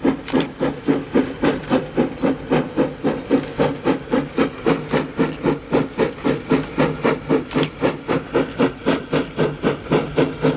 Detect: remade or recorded recorded